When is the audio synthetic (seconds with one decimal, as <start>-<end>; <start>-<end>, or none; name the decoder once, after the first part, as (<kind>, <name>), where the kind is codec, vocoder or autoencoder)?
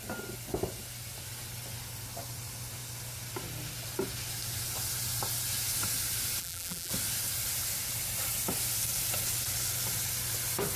6.4-6.9 (vocoder, BigVGAN v2)